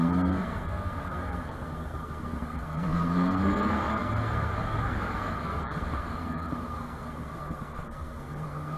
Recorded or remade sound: remade